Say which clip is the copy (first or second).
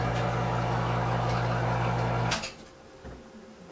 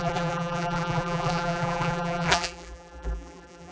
second